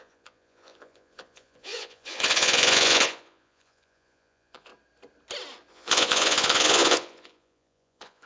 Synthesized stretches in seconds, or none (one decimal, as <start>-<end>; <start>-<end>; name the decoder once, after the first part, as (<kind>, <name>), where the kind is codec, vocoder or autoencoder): 0.0-4.7 (vocoder, Vocos); 5.7-8.3